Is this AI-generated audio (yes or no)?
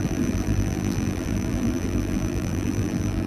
yes